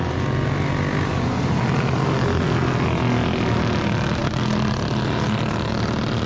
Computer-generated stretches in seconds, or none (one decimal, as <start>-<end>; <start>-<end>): none